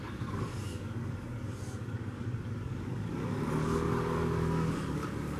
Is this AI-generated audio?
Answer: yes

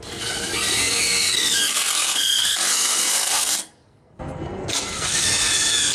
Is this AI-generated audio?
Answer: yes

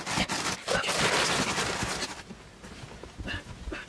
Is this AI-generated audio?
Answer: no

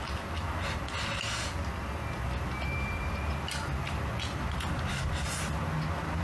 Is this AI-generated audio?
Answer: no